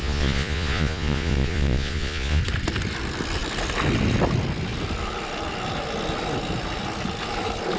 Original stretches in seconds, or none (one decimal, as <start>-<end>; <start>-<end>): 2.4-7.8